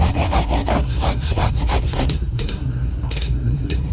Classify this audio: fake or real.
fake